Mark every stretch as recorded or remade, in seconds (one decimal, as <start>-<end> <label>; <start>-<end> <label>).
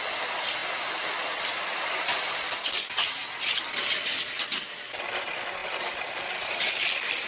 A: 0.0-7.3 recorded